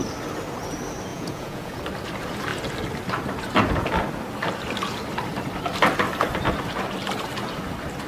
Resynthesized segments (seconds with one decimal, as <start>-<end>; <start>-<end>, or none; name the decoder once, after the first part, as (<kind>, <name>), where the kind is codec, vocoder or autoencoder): 1.1-1.8 (vocoder, Vocos)

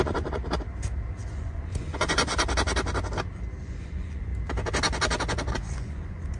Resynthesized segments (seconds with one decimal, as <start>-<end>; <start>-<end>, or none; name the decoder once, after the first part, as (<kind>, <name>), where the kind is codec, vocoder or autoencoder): 0.0-0.4 (vocoder, Vocos); 1.2-2.3; 3.6-4.3; 5.5-6.4